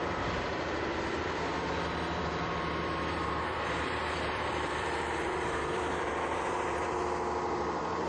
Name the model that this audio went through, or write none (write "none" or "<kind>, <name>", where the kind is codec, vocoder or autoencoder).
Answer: vocoder, BigVGAN v2